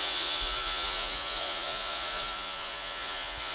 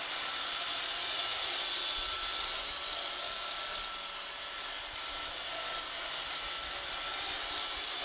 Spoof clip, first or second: first